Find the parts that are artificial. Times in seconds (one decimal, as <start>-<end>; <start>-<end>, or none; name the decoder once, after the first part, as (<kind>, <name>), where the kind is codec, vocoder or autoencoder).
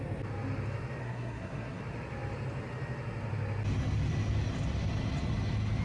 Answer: 1.0-1.8 (codec, SNAC)